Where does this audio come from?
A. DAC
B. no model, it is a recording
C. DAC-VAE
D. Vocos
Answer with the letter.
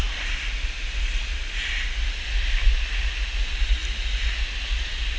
B